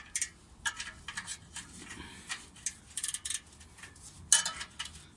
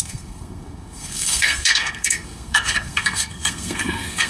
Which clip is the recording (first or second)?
first